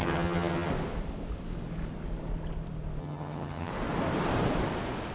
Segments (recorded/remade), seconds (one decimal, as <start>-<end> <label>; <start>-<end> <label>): 0.0-0.7 remade; 0.7-3.0 recorded; 3.0-3.7 remade; 3.7-5.1 recorded